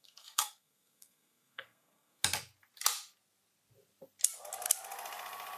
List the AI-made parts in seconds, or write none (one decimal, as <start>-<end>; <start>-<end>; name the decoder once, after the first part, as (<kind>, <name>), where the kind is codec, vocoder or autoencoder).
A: 0.0-2.2 (codec, SNAC)